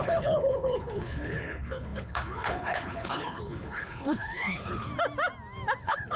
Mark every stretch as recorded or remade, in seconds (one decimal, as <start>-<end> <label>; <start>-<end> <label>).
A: 0.0-4.9 remade; 4.9-5.8 recorded; 5.8-6.2 remade